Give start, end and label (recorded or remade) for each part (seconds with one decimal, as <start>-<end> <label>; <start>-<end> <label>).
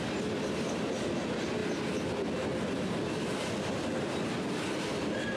0.0-5.4 recorded